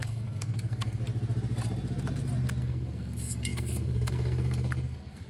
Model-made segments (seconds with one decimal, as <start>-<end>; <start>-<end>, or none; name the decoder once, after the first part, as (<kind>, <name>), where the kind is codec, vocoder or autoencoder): 0.0-1.0 (codec, SNAC); 2.6-5.3